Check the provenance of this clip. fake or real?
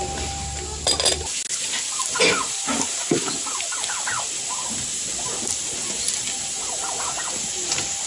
real